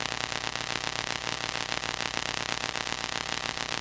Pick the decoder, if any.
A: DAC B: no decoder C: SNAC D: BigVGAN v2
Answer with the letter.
B